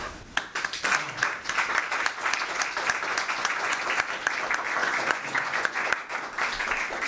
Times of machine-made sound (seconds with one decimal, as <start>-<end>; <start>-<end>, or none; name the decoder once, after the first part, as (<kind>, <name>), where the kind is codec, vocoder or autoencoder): 3.1-3.8 (vocoder, Vocos); 4.8-5.9